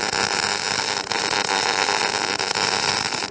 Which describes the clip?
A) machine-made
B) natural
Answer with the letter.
B